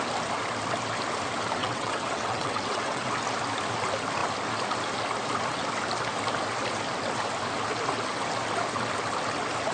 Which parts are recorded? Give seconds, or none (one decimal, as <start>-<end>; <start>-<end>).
0.0-1.6; 3.1-9.7

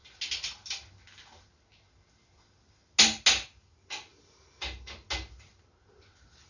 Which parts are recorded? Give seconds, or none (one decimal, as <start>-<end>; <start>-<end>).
0.0-6.5